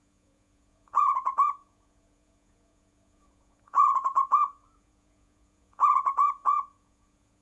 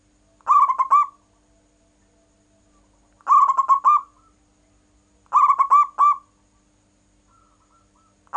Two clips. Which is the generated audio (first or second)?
first